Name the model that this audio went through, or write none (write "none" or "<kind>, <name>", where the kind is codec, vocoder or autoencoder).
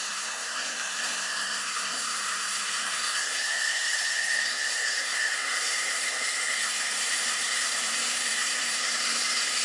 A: codec, SNAC